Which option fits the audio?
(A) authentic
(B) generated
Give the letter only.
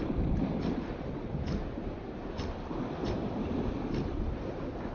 A